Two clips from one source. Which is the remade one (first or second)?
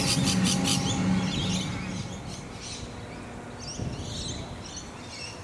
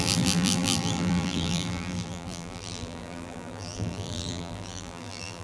second